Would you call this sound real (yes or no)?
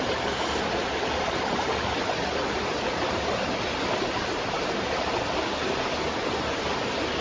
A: yes